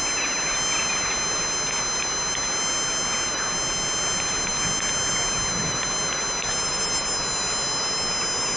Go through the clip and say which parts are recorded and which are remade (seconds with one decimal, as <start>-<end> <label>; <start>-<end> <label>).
0.0-8.6 recorded